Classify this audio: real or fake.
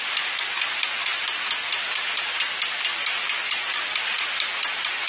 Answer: real